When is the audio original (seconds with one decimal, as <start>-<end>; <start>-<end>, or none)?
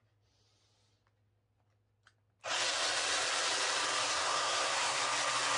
0.0-4.1; 5.0-5.6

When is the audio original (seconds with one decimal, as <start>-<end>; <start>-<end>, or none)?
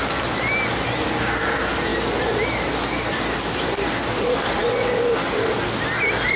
0.0-6.4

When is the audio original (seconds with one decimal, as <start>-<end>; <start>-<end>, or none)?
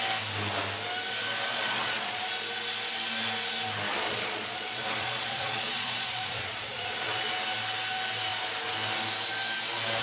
0.0-1.5; 2.2-3.9; 7.3-10.0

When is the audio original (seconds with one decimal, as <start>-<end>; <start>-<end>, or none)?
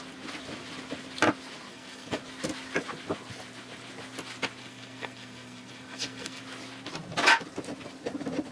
0.0-1.7; 2.2-4.6; 6.4-8.5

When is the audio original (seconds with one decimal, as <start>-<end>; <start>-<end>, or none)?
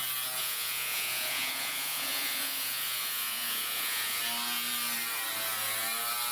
0.0-0.4; 4.2-6.3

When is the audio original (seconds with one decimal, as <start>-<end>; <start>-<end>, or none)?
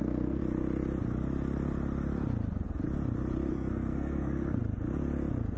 0.4-3.5; 4.6-5.6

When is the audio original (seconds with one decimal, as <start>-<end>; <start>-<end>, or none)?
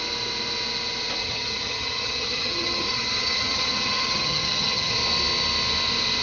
0.0-1.2; 4.9-6.2